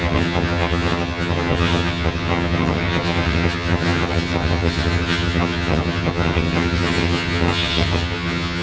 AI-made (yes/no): yes